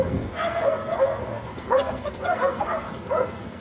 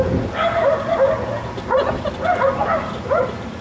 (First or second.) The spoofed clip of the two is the first